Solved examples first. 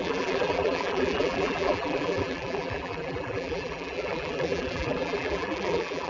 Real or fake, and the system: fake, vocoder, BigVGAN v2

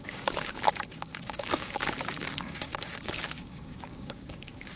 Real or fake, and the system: fake, codec, DAC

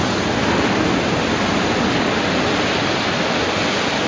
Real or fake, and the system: real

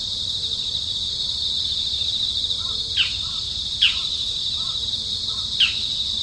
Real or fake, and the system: fake, vocoder, BigVGAN v2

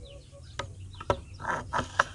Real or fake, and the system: real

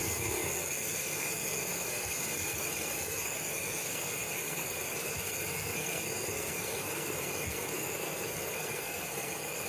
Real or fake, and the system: fake, codec, SNAC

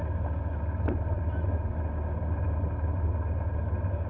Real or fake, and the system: real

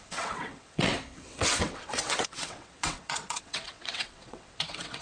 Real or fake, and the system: fake, vocoder, WaveNeXt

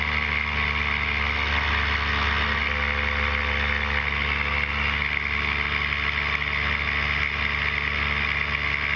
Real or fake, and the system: real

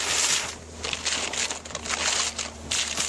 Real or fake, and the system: real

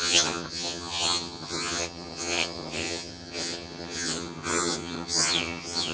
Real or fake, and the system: fake, vocoder, HiFi-GAN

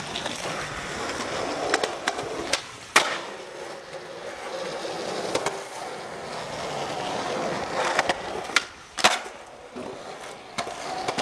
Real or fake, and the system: real